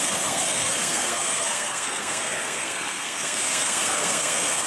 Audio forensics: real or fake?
fake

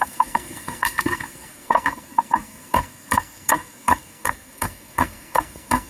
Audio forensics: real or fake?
fake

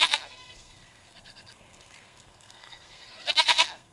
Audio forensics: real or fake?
fake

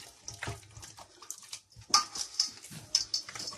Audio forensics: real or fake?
real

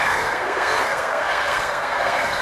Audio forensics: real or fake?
fake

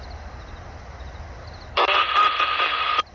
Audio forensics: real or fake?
real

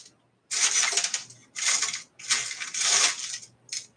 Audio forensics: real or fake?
real